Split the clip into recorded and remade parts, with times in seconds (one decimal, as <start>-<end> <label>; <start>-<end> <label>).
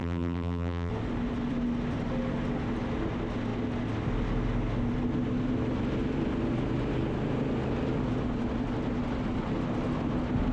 0.0-0.9 remade; 0.9-10.5 recorded